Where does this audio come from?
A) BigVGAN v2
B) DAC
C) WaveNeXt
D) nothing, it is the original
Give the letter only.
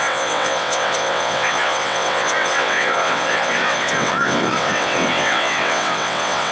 C